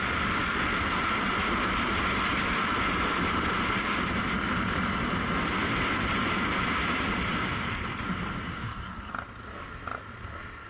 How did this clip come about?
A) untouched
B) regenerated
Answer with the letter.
A